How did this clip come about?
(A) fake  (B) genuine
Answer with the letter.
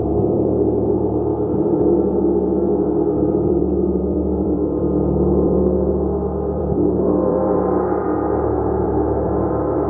A